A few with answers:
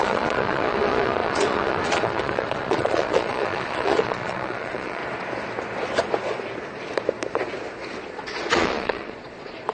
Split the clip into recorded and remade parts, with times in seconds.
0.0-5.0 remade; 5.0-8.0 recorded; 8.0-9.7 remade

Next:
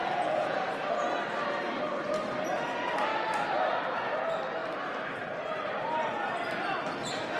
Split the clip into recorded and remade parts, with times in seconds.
0.0-0.7 remade; 0.7-7.4 recorded

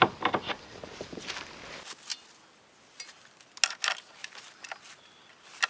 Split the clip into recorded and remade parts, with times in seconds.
0.0-5.7 recorded

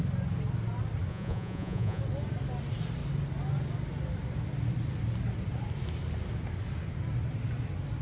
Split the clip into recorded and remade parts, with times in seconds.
0.0-1.1 recorded; 1.1-2.0 remade; 2.0-8.0 recorded